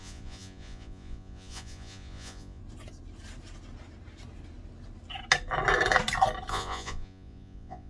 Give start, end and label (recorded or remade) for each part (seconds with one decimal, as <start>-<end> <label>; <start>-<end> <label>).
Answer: 0.0-2.6 remade; 2.6-6.5 recorded; 6.5-7.9 remade